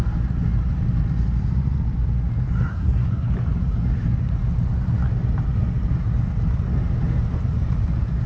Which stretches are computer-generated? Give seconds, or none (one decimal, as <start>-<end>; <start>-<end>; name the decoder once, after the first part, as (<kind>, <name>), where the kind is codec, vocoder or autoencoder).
2.7-3.3 (codec, SNAC)